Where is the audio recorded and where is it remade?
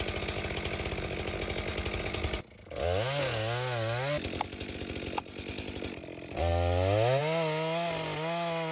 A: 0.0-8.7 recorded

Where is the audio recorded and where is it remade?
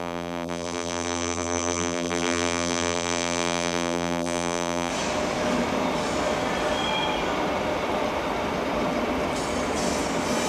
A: 0.0-4.9 remade; 4.9-10.5 recorded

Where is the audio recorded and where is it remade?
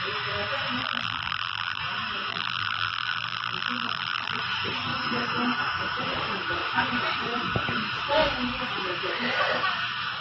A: 0.0-0.8 recorded; 0.8-1.8 remade; 1.8-2.3 recorded; 2.3-4.4 remade; 4.4-10.2 recorded